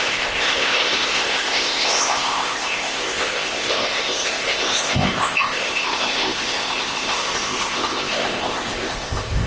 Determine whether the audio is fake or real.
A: fake